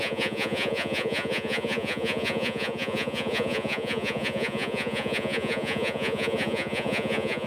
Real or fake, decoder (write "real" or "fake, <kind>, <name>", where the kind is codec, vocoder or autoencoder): fake, vocoder, Vocos